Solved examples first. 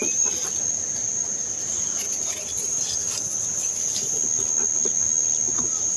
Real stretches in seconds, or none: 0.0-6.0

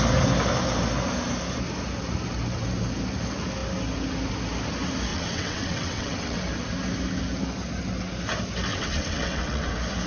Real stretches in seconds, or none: 0.0-5.1; 6.4-8.7; 9.7-10.1

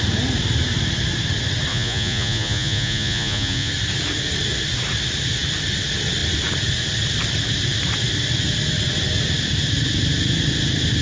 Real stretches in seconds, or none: 0.0-1.7; 3.7-11.0

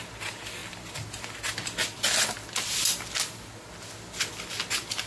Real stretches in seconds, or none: 0.0-5.1

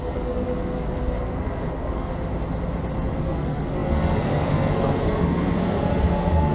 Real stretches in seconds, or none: 2.1-3.2